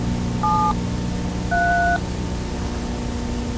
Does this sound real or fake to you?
real